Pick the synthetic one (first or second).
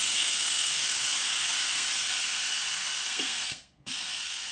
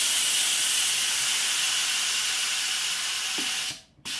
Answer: first